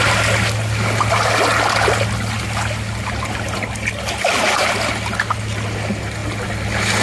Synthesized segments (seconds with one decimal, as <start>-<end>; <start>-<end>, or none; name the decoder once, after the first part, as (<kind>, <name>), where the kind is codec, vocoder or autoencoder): none